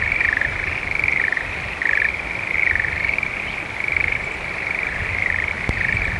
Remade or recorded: recorded